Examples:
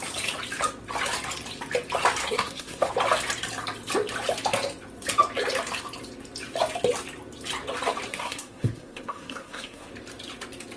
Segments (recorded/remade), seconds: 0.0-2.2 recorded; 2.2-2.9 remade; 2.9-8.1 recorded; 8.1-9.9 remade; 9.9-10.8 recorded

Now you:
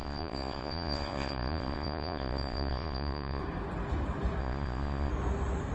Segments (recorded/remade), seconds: 0.0-3.4 remade; 3.4-4.4 recorded; 4.4-5.1 remade; 5.1-5.7 recorded

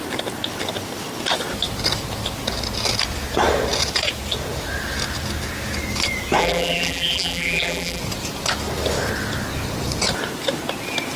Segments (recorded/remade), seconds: 0.0-6.4 recorded; 6.4-8.0 remade; 8.0-11.2 recorded

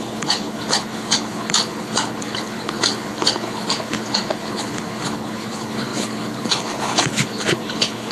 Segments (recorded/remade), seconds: 0.0-8.1 remade

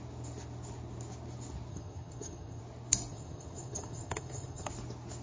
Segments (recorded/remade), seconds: 0.0-1.7 recorded; 1.7-2.6 remade; 2.6-3.1 recorded; 3.1-4.7 remade; 4.7-5.2 recorded